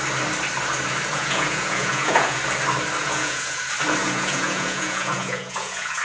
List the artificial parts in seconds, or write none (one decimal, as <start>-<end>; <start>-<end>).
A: 1.1-2.4; 3.0-3.6; 4.0-6.0